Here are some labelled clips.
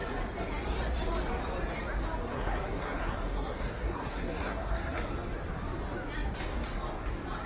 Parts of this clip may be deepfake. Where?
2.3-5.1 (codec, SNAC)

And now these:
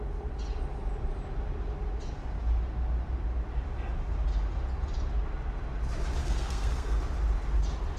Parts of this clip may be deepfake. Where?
6.2-7.0 (codec, SNAC)

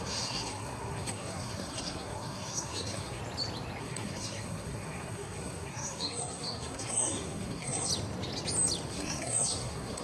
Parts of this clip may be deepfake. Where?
0.0-3.2 (codec, SNAC); 3.8-7.9; 8.9-10.0

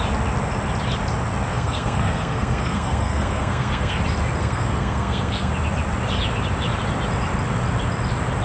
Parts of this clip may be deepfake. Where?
1.5-4.0 (codec, SNAC); 4.4-5.5

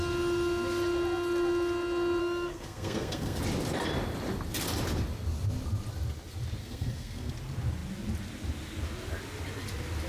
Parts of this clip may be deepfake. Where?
2.2-3.4 (codec, SNAC); 6.6-7.3

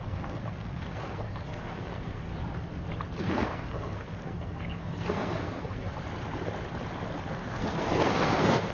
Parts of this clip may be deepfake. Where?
0.0-2.3 (codec, SNAC); 3.2-5.9; 7.2-8.7